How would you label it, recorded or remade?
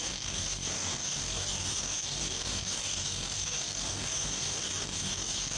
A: remade